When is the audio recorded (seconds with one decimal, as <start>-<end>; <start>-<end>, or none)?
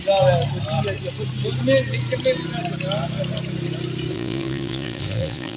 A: 0.0-4.1